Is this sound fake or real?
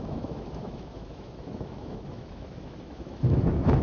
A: fake